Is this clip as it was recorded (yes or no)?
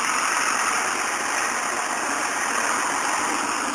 yes